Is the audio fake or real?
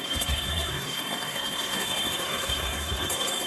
fake